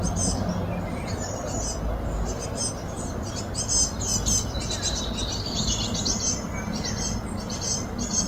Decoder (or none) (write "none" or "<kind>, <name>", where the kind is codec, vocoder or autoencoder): none